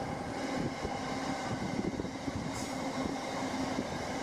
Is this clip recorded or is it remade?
remade